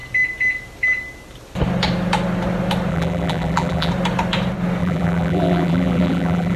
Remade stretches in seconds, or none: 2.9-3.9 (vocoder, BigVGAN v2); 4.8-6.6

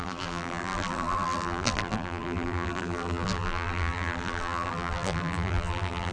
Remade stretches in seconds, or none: 0.0-6.1 (vocoder, BigVGAN v2)

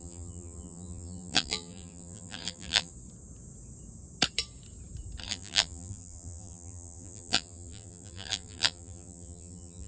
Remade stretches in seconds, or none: 0.0-2.9 (vocoder, BigVGAN v2); 5.2-9.9

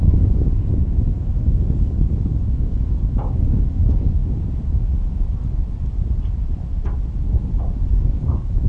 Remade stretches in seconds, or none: 0.0-4.2 (codec, DAC); 7.9-8.7

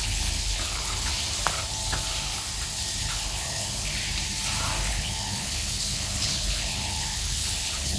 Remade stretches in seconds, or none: 0.0-1.1 (codec, HILCodec); 3.0-3.9; 4.9-8.0

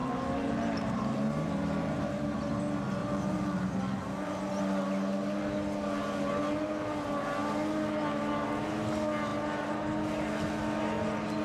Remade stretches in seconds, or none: 0.0-2.5 (vocoder, BigVGAN v2); 3.0-4.6

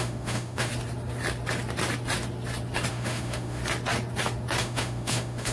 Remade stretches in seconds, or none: 0.0-0.7 (autoencoder, DAC-VAE); 2.9-3.6; 4.6-5.5

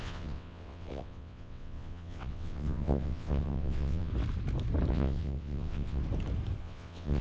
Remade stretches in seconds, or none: 0.0-4.1 (vocoder, WaveNeXt); 4.9-6.0; 6.6-7.2